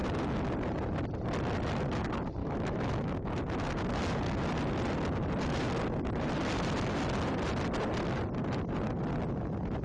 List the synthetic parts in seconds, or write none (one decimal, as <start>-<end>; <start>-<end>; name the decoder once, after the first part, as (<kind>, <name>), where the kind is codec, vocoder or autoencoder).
2.4-3.3 (autoencoder, DAC-VAE)